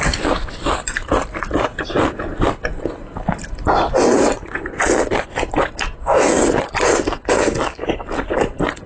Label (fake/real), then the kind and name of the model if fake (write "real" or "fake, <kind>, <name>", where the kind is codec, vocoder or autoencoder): real